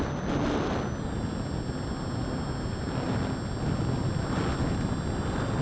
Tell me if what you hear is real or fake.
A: real